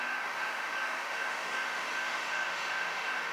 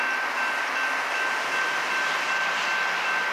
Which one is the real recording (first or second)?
second